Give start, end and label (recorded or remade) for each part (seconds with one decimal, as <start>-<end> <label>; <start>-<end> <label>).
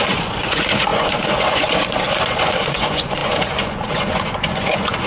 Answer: 0.0-5.1 remade